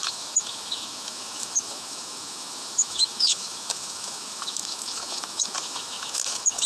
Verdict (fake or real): fake